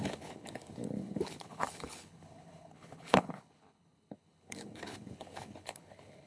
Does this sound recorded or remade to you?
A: remade